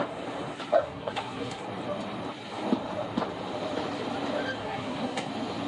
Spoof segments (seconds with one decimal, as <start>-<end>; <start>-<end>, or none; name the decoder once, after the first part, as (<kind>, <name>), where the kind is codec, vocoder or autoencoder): 0.7-1.6 (codec, SNAC); 4.6-5.3